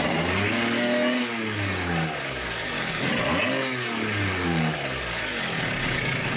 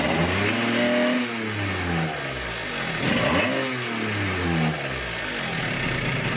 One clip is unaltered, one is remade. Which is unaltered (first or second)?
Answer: second